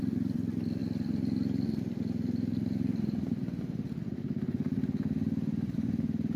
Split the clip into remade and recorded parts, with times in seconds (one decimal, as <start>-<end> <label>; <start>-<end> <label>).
0.0-6.4 recorded